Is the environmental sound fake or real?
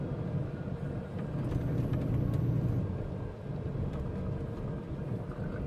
real